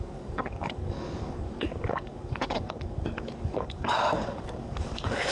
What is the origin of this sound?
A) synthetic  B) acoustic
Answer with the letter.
A